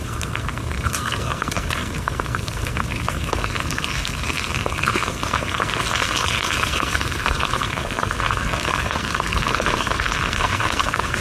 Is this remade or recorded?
remade